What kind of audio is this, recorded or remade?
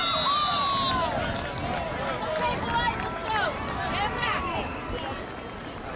recorded